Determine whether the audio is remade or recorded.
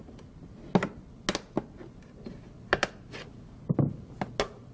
recorded